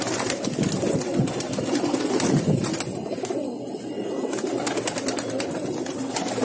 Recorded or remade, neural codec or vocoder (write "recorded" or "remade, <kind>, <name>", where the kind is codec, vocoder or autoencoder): recorded